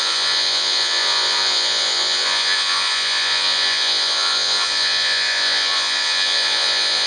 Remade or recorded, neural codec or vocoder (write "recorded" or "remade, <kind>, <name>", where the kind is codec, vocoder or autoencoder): remade, vocoder, Vocos